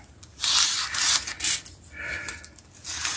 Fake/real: real